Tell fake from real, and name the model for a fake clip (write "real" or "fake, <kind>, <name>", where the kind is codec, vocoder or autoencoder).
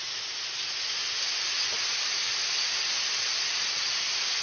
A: real